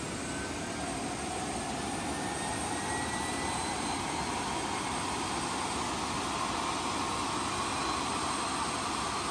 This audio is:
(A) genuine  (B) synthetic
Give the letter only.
A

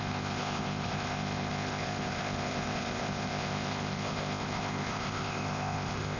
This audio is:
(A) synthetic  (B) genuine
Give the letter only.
A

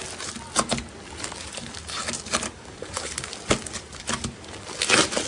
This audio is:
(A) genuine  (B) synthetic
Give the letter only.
A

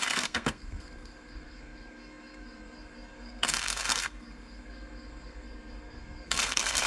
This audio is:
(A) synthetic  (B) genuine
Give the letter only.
A